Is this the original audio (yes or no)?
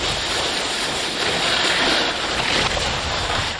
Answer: yes